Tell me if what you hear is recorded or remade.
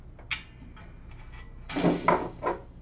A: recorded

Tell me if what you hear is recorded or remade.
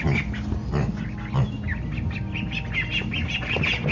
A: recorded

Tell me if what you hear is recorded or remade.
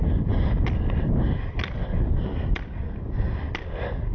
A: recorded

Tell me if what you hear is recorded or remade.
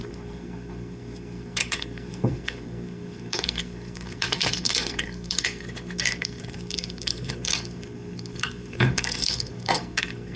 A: remade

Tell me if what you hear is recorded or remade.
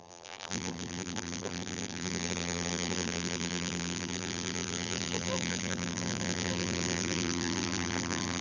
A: remade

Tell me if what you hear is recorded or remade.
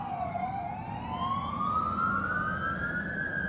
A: recorded